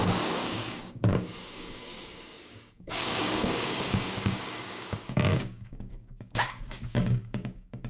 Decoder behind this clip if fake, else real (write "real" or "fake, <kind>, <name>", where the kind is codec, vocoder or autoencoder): fake, codec, DAC